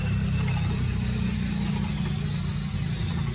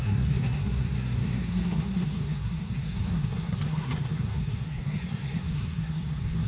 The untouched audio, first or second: first